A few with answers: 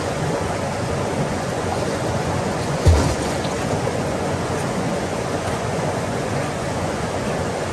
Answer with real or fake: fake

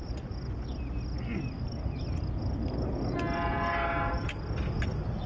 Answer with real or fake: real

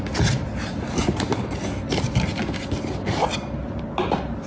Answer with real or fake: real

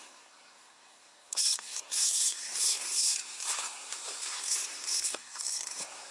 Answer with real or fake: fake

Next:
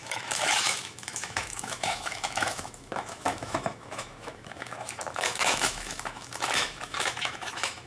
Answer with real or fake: fake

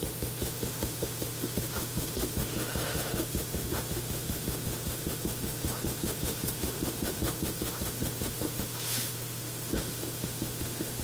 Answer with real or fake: fake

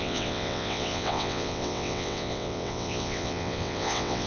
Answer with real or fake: fake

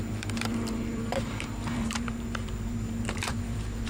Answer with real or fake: fake